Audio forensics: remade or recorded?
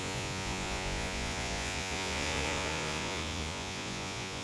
remade